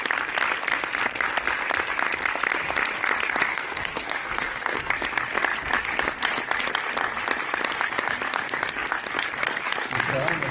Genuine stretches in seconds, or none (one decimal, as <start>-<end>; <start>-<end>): 0.0-3.5; 4.9-10.5